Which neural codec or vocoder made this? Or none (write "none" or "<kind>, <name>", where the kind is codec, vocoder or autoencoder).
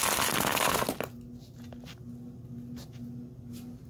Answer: none